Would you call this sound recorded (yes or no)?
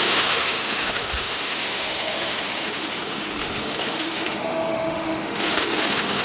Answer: no